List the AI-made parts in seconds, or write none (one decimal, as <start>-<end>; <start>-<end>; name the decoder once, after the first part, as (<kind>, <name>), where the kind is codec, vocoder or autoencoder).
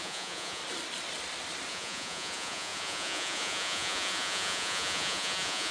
0.0-0.6 (vocoder, Vocos); 1.7-5.7